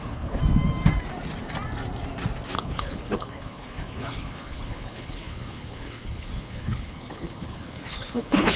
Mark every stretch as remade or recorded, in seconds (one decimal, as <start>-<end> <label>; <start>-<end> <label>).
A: 0.0-0.4 remade; 0.4-2.6 recorded; 2.6-8.6 remade